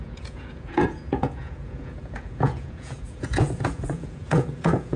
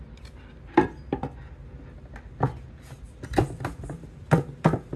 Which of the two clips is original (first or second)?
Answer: second